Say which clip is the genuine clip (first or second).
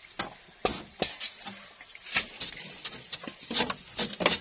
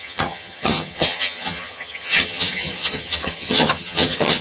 first